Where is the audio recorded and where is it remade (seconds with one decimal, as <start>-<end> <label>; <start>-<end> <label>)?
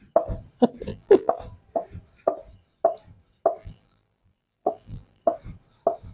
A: 0.0-0.9 recorded; 0.9-1.4 remade; 1.4-3.6 recorded; 3.6-5.2 remade; 5.2-6.1 recorded